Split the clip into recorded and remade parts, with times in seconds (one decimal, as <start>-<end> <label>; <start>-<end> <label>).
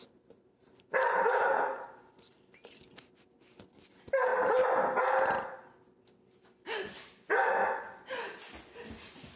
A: 0.0-2.7 remade; 2.7-9.4 recorded